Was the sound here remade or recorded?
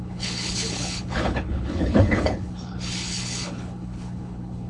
remade